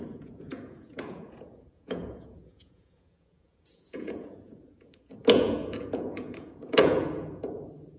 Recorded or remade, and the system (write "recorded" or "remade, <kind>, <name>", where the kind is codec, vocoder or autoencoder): remade, vocoder, Vocos